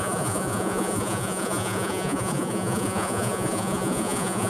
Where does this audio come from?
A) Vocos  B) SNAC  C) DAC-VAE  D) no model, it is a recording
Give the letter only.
A